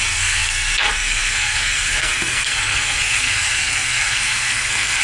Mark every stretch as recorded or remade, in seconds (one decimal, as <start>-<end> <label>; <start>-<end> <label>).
0.0-5.0 remade

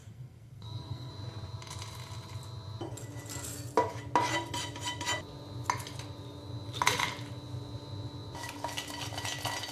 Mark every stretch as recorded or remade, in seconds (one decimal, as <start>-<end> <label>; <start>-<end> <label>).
0.0-1.1 remade; 1.1-9.7 recorded